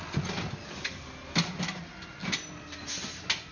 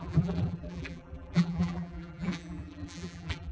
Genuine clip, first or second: first